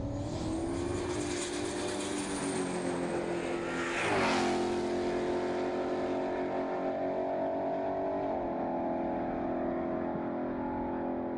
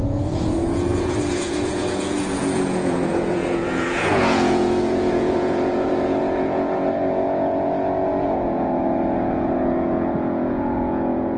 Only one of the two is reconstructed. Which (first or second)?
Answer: second